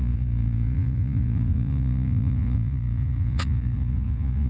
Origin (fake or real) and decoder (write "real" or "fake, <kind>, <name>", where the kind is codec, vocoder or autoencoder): fake, vocoder, Vocos